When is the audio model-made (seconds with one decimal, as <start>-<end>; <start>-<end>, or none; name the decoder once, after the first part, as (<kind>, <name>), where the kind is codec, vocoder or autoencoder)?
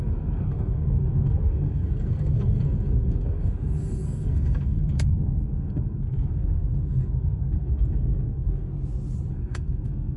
0.0-8.7 (codec, SNAC); 9.3-10.2